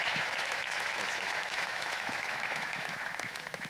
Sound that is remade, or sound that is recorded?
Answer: remade